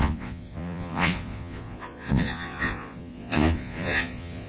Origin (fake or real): fake